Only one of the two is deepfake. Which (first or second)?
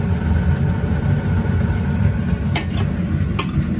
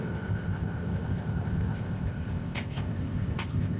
second